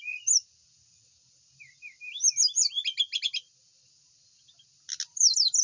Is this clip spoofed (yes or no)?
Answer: no